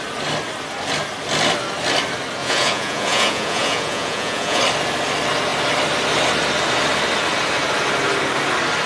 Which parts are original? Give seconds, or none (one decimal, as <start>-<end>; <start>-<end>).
0.0-2.4; 4.6-8.9